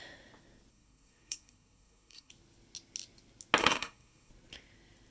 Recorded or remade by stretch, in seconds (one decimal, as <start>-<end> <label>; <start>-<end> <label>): 0.0-0.7 recorded; 0.7-2.3 remade; 2.3-3.6 recorded; 3.6-4.3 remade; 4.3-5.1 recorded